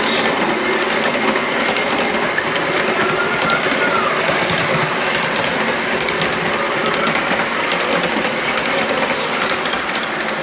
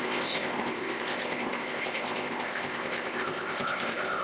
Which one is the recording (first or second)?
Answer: first